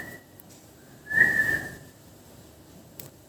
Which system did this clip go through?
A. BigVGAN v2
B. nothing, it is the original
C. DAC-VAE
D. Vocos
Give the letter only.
A